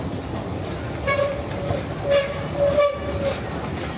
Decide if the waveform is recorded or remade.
recorded